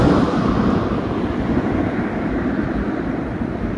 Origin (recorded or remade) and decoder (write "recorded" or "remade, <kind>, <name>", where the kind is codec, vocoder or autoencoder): remade, vocoder, BigVGAN v2